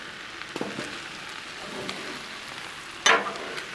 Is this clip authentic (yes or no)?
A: yes